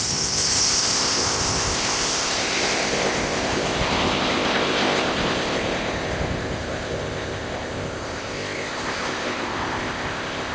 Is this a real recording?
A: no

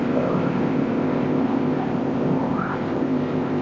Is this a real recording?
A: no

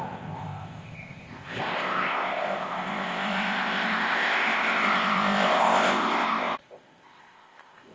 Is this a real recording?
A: no